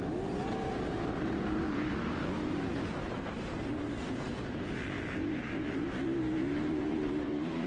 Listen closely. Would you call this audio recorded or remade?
remade